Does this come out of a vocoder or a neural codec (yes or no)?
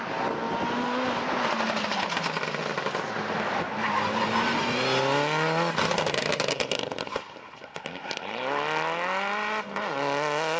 no